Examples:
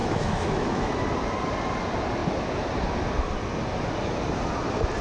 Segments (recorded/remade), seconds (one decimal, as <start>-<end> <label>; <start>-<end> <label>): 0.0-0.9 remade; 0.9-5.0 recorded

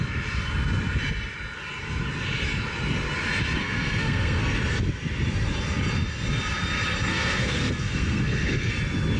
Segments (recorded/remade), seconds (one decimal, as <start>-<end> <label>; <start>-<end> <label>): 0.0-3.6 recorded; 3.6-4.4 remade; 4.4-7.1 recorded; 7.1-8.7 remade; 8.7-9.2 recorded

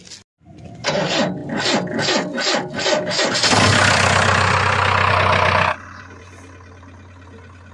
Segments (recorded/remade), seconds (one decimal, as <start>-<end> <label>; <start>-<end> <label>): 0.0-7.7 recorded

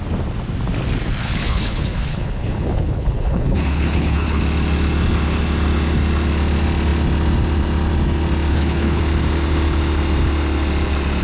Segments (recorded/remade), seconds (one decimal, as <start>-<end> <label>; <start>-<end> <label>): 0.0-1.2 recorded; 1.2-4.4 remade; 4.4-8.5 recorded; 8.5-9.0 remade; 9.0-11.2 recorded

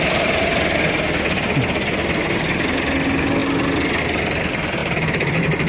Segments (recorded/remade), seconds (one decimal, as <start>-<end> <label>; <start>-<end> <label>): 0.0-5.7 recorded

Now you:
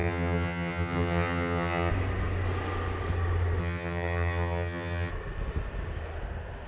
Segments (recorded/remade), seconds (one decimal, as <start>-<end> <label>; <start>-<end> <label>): 0.0-1.9 remade; 1.9-3.6 recorded; 3.6-5.1 remade; 5.1-6.7 recorded

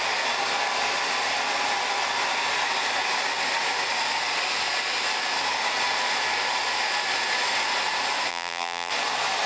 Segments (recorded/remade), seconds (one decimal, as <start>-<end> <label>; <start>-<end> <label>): 0.0-8.3 recorded; 8.3-8.9 remade; 8.9-9.5 recorded